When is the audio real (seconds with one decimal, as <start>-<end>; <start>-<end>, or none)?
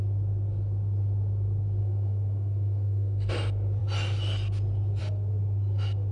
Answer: 0.0-1.8; 3.3-6.1